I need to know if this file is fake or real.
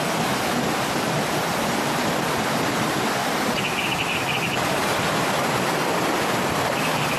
fake